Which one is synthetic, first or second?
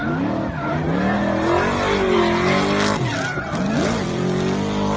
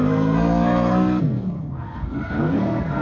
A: second